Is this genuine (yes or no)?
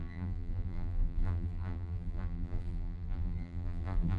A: no